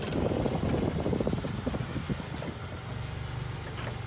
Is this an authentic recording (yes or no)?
yes